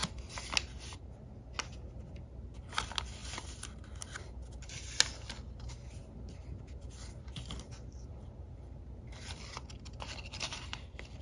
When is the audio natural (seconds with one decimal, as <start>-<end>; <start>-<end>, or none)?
0.0-11.2